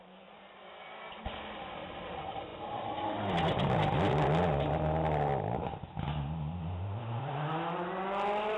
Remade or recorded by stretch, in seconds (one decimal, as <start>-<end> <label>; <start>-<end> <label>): 0.0-8.6 recorded